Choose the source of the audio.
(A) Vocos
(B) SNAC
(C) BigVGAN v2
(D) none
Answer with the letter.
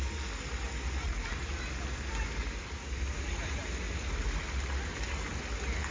D